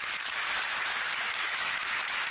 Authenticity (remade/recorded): remade